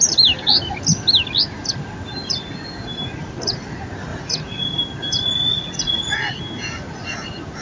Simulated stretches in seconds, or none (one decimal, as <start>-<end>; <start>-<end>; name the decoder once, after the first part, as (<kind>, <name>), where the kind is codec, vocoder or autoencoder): 4.1-4.8 (vocoder, Vocos); 5.5-6.4